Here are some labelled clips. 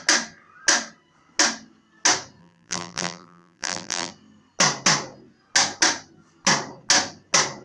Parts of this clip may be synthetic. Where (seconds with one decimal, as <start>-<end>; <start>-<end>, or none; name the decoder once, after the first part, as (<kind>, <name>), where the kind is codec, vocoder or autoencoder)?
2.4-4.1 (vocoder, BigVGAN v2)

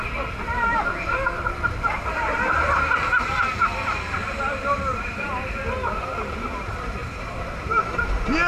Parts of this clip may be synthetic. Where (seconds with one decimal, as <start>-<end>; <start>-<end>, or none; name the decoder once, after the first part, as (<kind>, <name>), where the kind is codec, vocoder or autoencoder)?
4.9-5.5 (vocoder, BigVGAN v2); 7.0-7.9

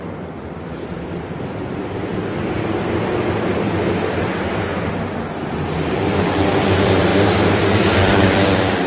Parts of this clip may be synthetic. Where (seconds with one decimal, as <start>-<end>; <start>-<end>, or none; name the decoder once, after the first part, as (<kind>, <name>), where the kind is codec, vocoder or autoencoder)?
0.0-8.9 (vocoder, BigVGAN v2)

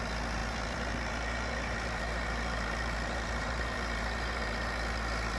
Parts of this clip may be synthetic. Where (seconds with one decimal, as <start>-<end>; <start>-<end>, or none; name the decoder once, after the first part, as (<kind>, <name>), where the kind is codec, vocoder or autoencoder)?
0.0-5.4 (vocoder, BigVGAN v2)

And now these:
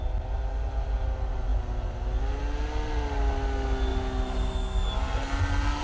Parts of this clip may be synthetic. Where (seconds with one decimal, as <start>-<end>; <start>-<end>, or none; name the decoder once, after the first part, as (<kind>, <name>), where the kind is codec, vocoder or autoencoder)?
none